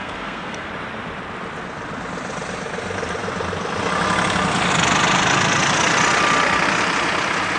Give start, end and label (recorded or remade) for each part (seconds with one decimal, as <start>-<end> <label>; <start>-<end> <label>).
0.0-0.7 remade; 0.7-7.6 recorded